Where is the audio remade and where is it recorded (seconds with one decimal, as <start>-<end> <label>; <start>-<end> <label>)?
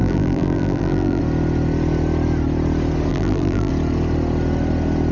0.0-1.2 remade; 1.2-3.1 recorded; 3.1-3.7 remade; 3.7-5.1 recorded